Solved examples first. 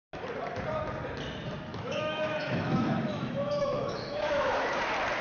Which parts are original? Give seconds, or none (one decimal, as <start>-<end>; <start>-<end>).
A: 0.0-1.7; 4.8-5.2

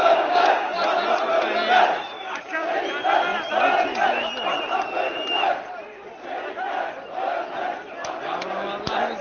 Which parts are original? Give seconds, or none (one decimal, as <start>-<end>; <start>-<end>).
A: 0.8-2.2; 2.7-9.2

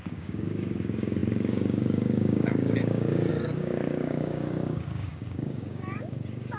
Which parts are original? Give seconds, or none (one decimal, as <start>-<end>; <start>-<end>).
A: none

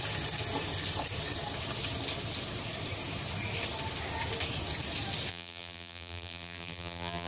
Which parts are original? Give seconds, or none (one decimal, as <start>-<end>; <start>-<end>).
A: 0.0-5.3

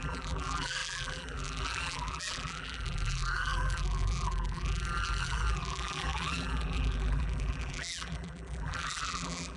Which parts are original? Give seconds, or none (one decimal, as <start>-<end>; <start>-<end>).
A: none

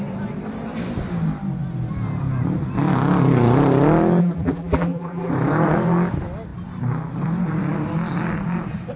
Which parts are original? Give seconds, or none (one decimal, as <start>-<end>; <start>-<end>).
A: 0.0-4.2; 5.3-9.0

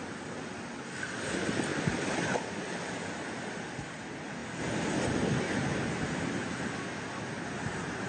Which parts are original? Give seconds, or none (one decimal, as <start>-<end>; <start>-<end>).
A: 0.0-8.1